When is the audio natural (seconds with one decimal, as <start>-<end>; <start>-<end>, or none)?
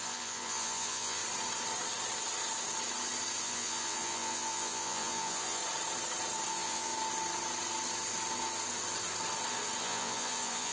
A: 1.2-3.4; 5.6-6.5; 6.9-9.8